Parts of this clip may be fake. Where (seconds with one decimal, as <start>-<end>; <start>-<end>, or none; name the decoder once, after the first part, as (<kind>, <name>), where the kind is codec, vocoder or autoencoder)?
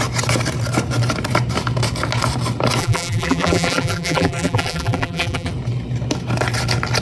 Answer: 2.8-5.5 (vocoder, BigVGAN v2)